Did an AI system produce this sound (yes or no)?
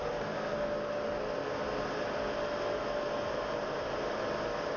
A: no